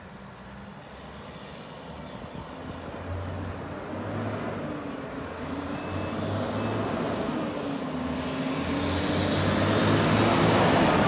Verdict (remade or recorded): recorded